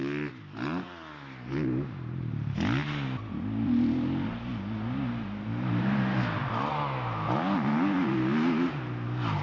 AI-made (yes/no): no